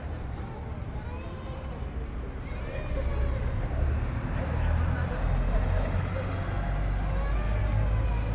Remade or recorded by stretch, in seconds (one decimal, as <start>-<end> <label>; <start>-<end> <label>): 0.0-8.3 recorded